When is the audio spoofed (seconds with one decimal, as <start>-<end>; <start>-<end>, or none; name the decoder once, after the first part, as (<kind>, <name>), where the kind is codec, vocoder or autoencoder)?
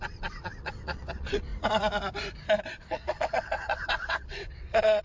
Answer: 0.0-1.5 (vocoder, WaveNeXt); 2.7-5.0